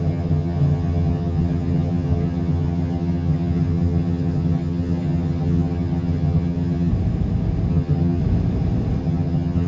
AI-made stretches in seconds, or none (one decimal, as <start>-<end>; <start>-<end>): 0.0-6.9; 7.7-8.2; 9.0-9.7

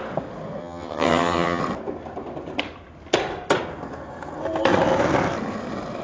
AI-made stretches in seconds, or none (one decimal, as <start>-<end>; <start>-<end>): 0.6-1.6

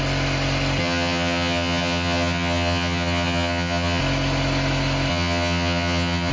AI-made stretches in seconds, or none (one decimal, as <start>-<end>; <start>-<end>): 0.8-4.0; 5.1-6.3

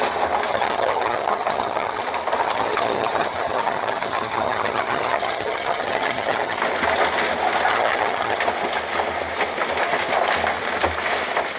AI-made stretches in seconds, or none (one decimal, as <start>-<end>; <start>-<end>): 0.5-2.0; 2.4-6.6; 7.7-8.4

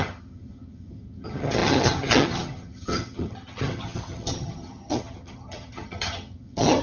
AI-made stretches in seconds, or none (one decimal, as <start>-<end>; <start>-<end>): 0.0-6.8

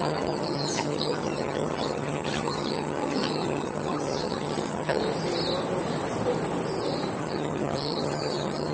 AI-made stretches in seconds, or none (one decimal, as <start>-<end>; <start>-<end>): 0.0-5.0; 7.2-8.7

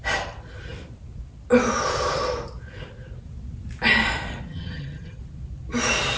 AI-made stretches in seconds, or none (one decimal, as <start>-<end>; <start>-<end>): 4.5-5.2